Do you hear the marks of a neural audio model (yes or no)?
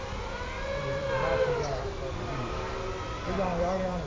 no